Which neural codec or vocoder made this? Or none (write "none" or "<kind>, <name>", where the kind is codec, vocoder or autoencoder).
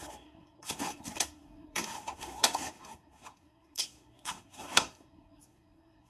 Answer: codec, SNAC